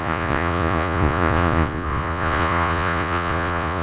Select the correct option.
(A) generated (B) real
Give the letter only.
A